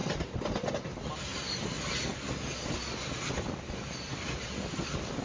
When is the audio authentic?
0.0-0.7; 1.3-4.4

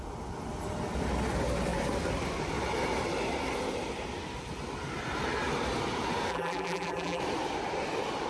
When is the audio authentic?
0.0-6.3; 7.2-8.3